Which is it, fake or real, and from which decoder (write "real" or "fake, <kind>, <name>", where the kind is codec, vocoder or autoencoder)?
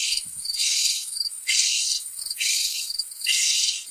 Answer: fake, codec, SNAC